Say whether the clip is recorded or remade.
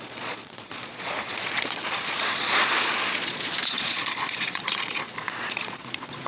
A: remade